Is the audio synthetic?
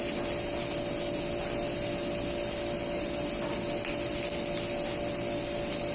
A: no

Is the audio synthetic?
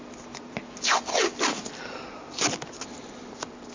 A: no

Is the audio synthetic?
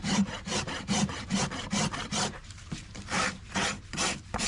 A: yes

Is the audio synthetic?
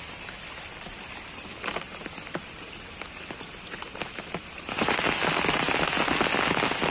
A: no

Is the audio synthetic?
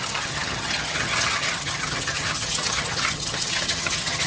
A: yes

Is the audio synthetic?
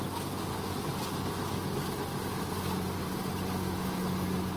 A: no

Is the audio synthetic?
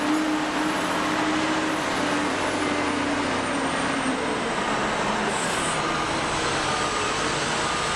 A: no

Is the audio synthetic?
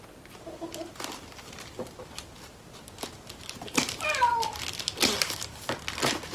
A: no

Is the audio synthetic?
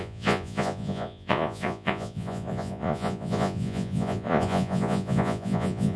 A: yes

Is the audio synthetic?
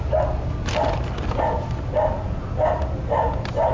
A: no